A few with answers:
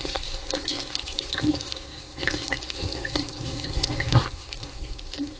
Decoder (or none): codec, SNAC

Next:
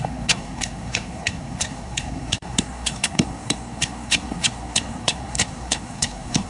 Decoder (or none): codec, SNAC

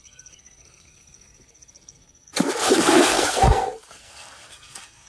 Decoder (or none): codec, SNAC